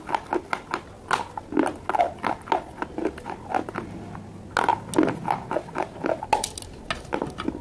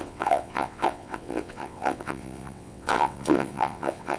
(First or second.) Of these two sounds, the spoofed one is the second